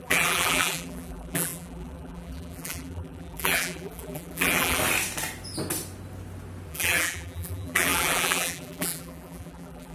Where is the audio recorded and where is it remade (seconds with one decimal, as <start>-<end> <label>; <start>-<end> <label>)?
0.0-4.8 remade; 4.8-6.7 recorded; 6.7-9.9 remade